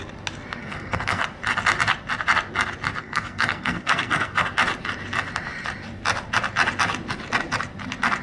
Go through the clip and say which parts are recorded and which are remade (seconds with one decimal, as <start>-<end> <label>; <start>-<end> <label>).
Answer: 0.0-0.6 recorded; 0.6-1.2 remade; 1.2-3.0 recorded; 3.0-4.5 remade; 4.5-8.2 recorded